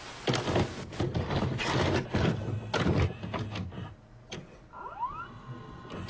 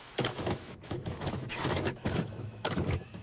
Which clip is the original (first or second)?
first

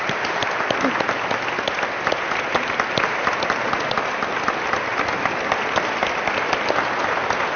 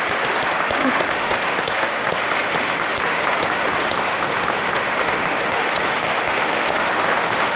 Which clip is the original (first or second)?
first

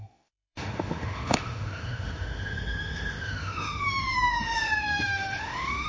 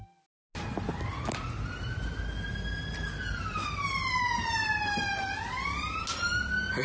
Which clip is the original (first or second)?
second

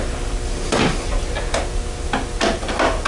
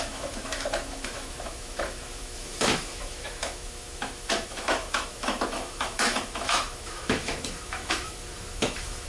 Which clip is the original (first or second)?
first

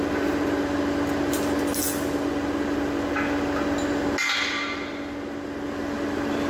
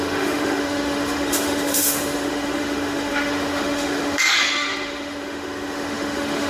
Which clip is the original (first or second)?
first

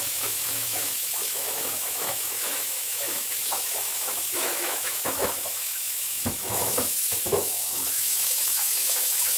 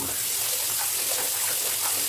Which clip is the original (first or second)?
second